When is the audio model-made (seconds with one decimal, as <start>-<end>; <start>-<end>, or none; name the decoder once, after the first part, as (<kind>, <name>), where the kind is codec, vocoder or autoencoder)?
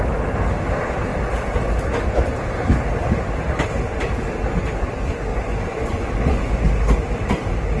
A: 5.3-6.6 (vocoder, Vocos)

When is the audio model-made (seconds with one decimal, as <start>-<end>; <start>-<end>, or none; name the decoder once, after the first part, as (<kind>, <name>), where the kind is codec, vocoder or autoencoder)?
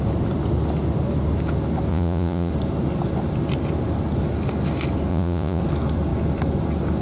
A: 1.9-2.5 (vocoder, Vocos); 5.1-5.6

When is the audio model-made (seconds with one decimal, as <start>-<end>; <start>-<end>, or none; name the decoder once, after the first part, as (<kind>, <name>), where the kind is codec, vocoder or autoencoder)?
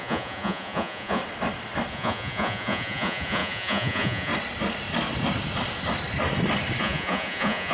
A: 0.0-1.2 (vocoder, Vocos); 1.9-4.3; 6.8-7.7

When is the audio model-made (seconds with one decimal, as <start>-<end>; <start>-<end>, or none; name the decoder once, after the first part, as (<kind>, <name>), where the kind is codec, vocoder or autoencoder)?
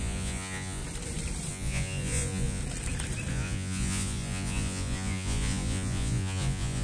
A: 0.0-0.8 (vocoder, Vocos); 1.5-2.6; 3.3-6.8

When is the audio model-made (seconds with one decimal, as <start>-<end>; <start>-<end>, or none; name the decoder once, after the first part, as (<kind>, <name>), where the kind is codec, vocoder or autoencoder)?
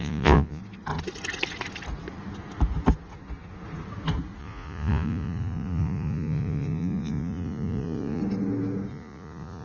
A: 0.0-0.6 (vocoder, Vocos); 4.4-8.2; 8.9-9.6